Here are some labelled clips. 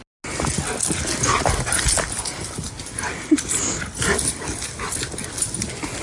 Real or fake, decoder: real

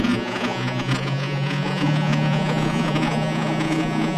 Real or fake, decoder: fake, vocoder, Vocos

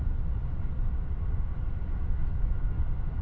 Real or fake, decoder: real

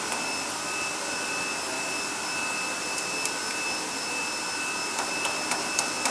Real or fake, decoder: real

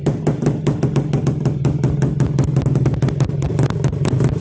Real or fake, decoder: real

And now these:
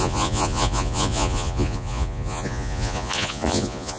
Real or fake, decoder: fake, vocoder, Vocos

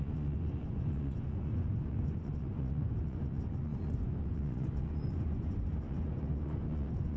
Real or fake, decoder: fake, vocoder, Vocos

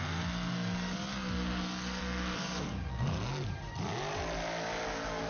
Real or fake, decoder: real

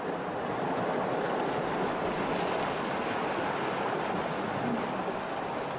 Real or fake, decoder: real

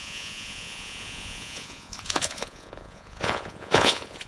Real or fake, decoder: fake, vocoder, Vocos